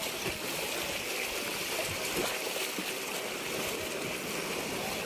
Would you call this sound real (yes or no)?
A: yes